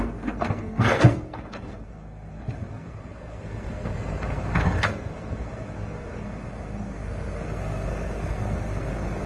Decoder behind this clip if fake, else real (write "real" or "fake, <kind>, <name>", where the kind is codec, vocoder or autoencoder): fake, codec, SNAC